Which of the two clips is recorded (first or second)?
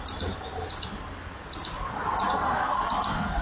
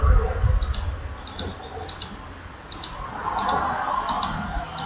second